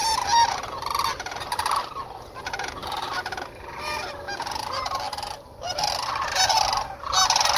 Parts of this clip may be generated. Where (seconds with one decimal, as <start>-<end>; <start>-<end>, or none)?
0.0-2.4